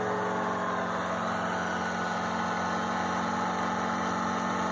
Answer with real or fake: real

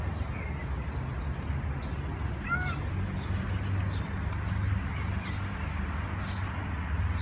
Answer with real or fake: real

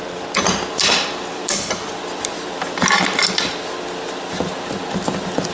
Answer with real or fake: real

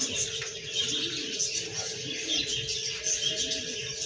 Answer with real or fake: real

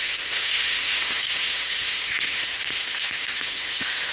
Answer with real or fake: fake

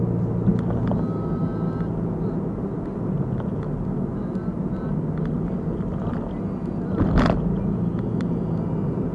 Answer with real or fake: real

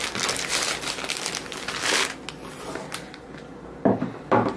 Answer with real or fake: real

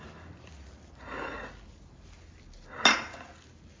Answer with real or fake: real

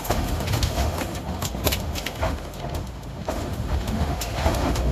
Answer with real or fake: fake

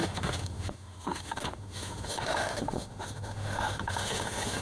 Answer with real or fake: fake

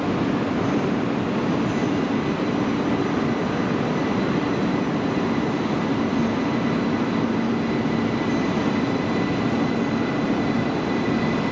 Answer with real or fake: real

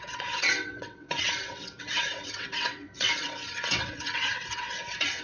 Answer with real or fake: fake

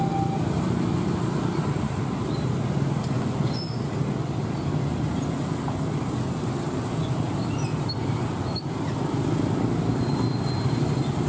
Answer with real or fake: real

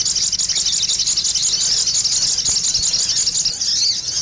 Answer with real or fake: real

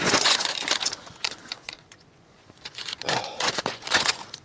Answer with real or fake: fake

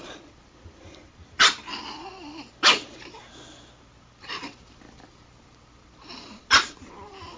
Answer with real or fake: fake